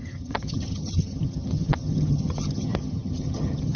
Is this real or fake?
fake